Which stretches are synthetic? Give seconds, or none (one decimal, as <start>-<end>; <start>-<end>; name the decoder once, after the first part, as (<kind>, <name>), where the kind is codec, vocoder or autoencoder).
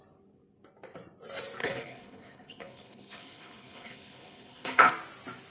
1.6-4.9 (codec, HILCodec)